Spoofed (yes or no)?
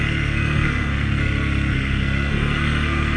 yes